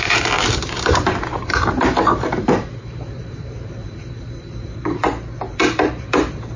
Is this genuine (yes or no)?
no